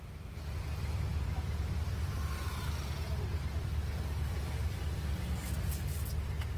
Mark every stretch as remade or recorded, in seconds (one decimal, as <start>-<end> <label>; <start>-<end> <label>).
0.0-6.6 recorded